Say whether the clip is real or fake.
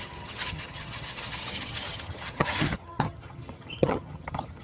fake